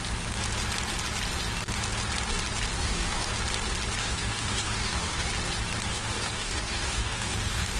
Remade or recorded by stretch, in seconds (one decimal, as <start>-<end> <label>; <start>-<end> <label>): 0.0-2.8 recorded; 2.8-3.3 remade; 3.3-4.0 recorded; 4.0-5.3 remade; 5.3-5.9 recorded; 5.9-7.8 remade